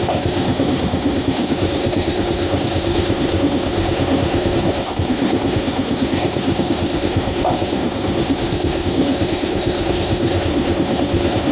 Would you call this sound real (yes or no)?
no